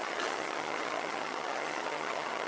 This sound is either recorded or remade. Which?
remade